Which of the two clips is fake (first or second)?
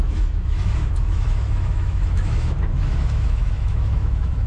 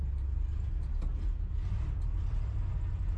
first